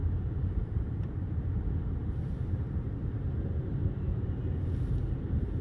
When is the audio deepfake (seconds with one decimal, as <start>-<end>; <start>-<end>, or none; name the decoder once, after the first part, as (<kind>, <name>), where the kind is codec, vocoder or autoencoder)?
0.0-1.3 (vocoder, BigVGAN v2); 2.0-4.3